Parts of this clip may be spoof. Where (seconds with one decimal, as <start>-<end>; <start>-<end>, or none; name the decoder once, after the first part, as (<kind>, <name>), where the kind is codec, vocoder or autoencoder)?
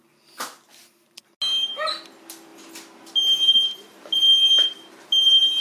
none